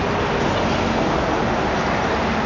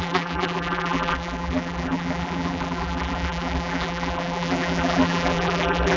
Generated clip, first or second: second